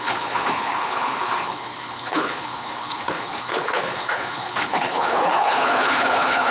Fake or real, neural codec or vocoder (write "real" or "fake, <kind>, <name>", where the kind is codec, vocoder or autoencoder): fake, codec, HILCodec